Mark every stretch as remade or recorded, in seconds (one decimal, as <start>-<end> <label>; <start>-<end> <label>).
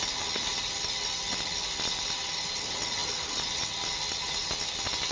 0.0-5.1 recorded